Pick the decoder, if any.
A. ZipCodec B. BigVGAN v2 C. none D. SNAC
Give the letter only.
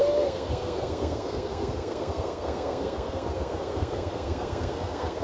D